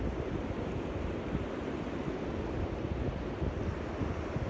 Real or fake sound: real